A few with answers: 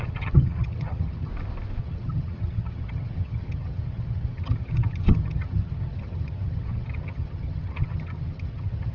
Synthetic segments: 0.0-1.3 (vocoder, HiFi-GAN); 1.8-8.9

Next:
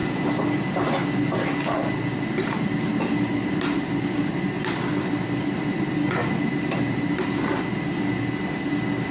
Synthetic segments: none

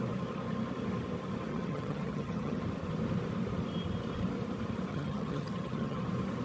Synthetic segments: 1.5-2.6 (vocoder, HiFi-GAN); 4.9-6.0

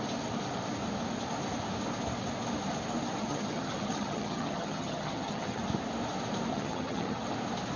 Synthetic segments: 3.2-5.6 (vocoder, HiFi-GAN); 6.5-7.2